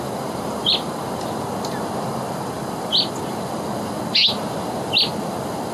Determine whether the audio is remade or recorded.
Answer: recorded